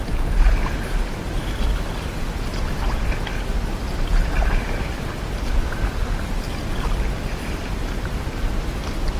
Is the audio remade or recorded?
recorded